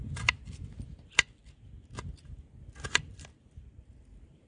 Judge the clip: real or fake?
real